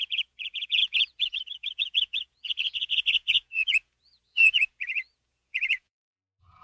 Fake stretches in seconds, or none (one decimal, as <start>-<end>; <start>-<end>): 0.0-6.6